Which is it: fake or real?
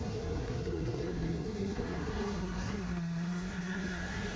fake